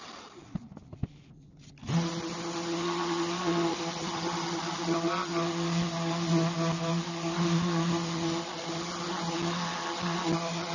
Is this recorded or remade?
recorded